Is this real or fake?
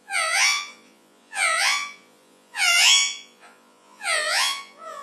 fake